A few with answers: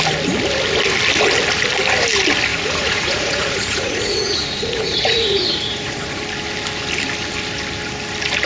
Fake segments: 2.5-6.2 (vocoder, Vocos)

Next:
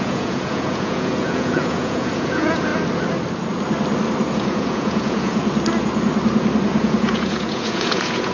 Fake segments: 0.0-2.7 (vocoder, Vocos); 4.3-5.4; 6.8-8.3

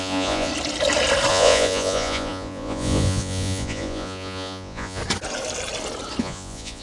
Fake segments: 0.0-0.5 (vocoder, Vocos); 1.3-5.0; 6.2-6.8

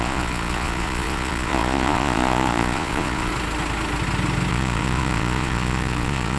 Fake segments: 0.0-3.3 (vocoder, Vocos); 4.5-6.4